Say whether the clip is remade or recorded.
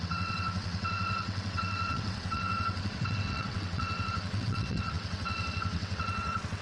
remade